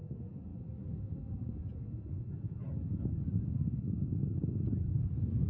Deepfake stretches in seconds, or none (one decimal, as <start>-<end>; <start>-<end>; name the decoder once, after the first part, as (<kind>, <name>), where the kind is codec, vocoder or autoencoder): none